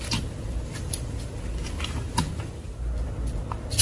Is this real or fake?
real